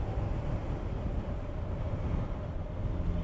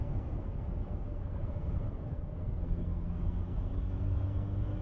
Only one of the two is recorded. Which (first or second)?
first